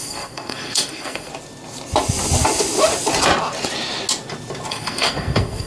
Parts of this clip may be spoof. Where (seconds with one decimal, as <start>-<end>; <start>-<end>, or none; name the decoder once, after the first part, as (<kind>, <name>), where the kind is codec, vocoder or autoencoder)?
0.0-1.3 (codec, SNAC); 4.7-5.7